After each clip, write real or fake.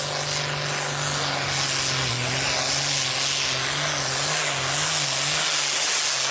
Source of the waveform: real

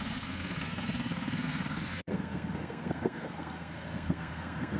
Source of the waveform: fake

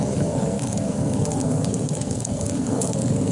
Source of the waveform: fake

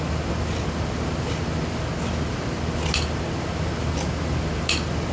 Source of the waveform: real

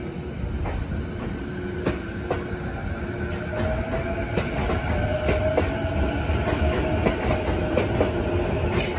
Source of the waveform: real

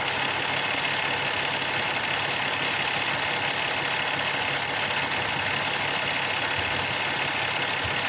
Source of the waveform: real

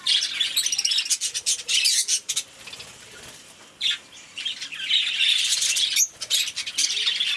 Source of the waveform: real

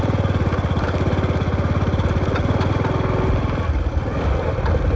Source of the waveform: real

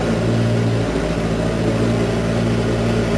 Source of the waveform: real